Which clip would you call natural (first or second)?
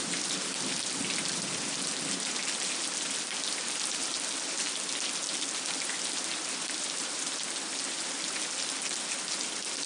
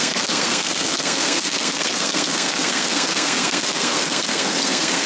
first